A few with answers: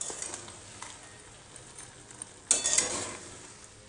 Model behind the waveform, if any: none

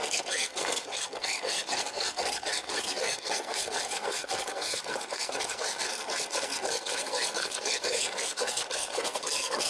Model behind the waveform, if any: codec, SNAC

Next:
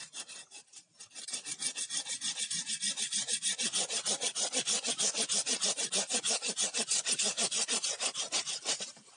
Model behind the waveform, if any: vocoder, BigVGAN v2